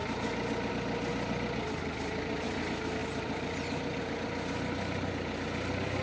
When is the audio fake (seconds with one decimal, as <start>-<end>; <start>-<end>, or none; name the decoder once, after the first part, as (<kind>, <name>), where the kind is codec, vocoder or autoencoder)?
1.1-2.6 (vocoder, BigVGAN v2); 3.0-4.0